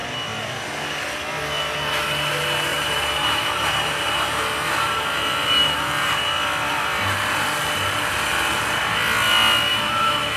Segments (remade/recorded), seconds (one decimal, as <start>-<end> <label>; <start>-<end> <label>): 0.0-2.7 recorded; 2.7-6.1 remade; 6.1-9.7 recorded; 9.7-10.4 remade